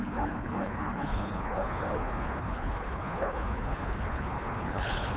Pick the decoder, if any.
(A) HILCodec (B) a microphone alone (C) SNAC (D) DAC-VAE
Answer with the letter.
A